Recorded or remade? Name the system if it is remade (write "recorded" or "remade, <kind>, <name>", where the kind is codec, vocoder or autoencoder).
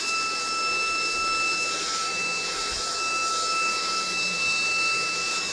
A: remade, autoencoder, DAC-VAE